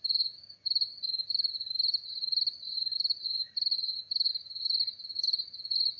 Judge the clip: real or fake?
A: real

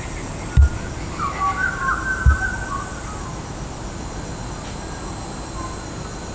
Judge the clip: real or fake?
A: real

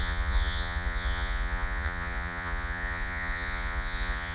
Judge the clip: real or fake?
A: fake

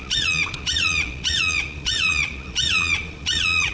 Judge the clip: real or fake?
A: fake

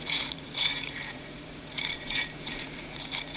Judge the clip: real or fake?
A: fake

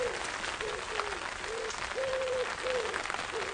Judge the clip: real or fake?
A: real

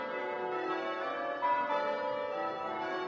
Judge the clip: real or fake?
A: real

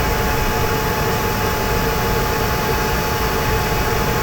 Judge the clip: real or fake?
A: real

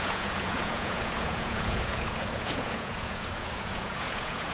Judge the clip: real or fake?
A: fake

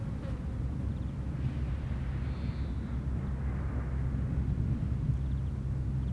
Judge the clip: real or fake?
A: real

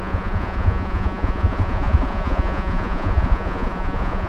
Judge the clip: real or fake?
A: fake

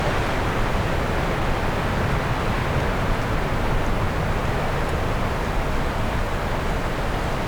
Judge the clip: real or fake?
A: real